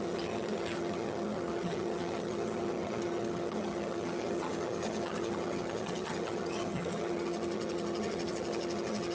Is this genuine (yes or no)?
no